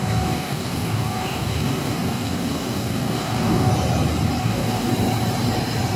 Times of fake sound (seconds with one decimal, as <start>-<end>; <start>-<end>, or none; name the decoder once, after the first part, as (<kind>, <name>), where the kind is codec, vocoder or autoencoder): 0.0-3.7 (codec, DAC); 4.4-4.9